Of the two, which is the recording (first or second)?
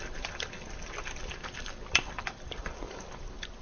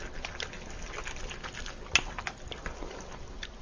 second